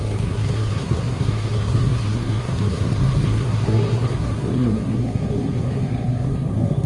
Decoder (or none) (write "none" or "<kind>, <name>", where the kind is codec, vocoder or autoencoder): codec, SNAC